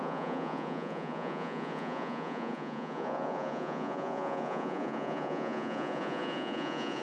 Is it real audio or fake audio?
fake